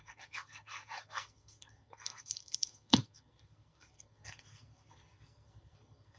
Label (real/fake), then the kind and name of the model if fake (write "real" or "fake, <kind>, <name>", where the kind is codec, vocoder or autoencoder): fake, codec, SNAC